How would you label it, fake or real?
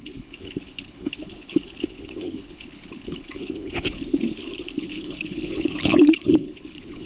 fake